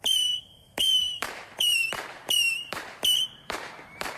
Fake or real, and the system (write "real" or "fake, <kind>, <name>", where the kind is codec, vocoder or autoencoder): fake, vocoder, BigVGAN v2